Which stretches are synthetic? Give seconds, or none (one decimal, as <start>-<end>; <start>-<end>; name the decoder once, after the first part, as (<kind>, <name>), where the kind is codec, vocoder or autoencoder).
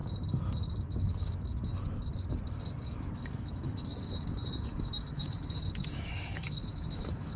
0.7-1.7 (autoencoder, DAC-VAE); 2.9-7.4